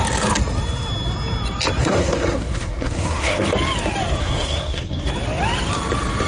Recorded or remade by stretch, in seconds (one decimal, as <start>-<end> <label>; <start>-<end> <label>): 0.0-1.8 recorded; 1.8-3.5 remade; 3.5-4.2 recorded; 4.2-5.1 remade; 5.1-6.3 recorded